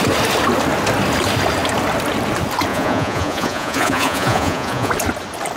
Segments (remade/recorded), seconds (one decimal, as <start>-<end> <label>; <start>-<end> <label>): 0.0-2.7 recorded; 2.7-4.9 remade; 4.9-5.6 recorded